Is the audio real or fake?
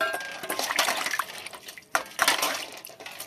real